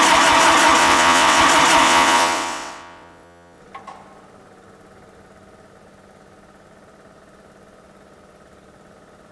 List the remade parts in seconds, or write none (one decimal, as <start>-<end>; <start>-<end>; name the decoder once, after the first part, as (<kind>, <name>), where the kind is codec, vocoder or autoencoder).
0.8-1.4 (vocoder, WaveNeXt); 1.8-3.6